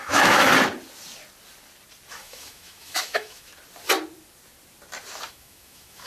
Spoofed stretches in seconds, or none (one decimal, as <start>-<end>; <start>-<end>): 0.0-0.5; 2.1-3.5; 5.3-6.1